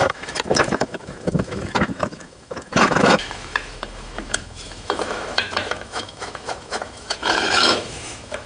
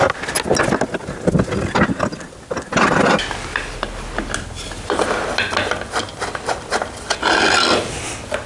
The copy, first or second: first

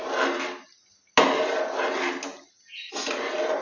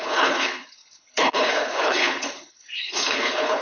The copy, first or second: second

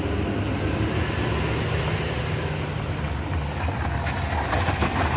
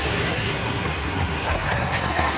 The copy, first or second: second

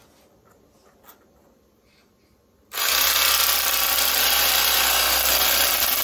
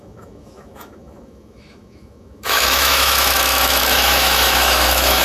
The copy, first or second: second